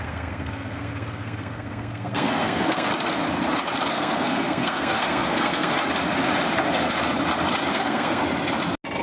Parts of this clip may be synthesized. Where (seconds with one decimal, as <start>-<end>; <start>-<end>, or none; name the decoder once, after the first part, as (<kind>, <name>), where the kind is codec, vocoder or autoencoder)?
0.0-2.9 (codec, SNAC); 3.9-5.7; 7.7-8.2